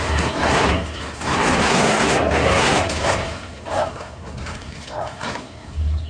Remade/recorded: remade